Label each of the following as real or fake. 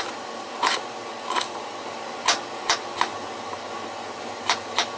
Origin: real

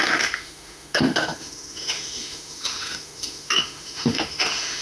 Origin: fake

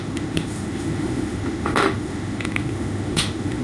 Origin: fake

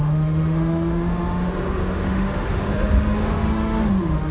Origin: fake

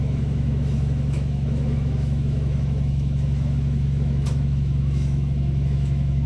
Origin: fake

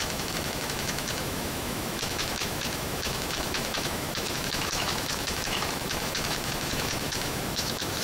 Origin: fake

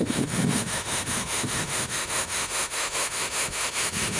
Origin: fake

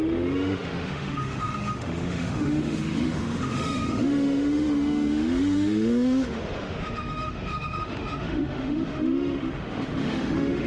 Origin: fake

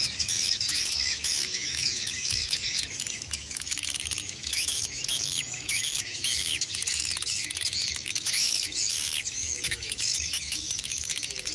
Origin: fake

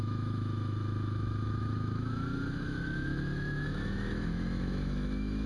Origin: fake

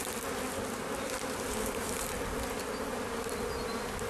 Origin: real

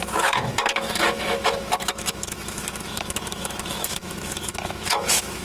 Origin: fake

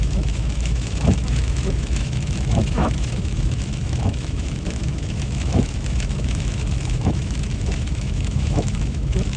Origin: fake